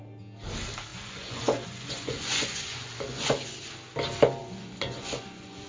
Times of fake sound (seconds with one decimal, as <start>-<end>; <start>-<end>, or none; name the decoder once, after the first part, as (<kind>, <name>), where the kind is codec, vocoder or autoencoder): 0.9-3.7 (vocoder, Vocos); 4.4-5.7